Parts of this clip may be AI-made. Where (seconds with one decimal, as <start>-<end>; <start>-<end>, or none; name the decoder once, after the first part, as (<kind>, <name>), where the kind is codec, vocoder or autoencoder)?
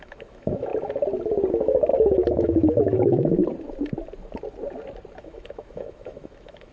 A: 0.0-0.7 (autoencoder, DAC-VAE); 1.5-3.4; 5.2-6.7